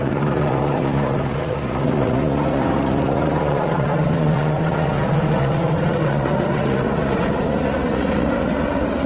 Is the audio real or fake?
fake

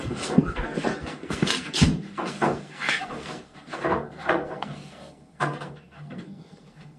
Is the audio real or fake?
fake